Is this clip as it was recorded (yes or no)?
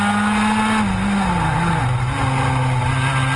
yes